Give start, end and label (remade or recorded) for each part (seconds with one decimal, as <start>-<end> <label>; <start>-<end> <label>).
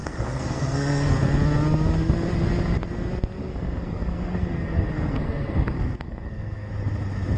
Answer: 0.0-1.1 remade; 1.1-3.4 recorded; 3.4-6.7 remade; 6.7-7.4 recorded